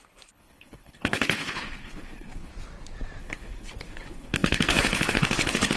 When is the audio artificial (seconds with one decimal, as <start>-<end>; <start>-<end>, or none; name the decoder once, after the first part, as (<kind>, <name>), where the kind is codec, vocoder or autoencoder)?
0.0-2.5 (codec, HILCodec); 3.2-5.8